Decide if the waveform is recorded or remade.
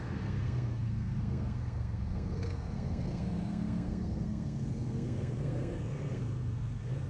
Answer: remade